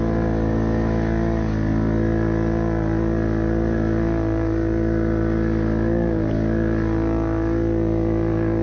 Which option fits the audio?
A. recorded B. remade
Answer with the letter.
A